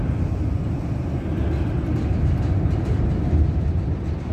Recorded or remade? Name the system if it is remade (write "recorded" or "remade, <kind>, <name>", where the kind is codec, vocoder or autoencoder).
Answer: recorded